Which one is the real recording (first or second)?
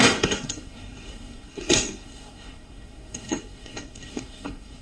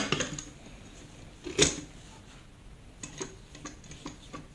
second